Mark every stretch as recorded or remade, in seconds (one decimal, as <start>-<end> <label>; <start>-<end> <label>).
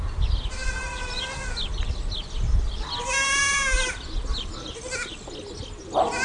0.0-6.2 recorded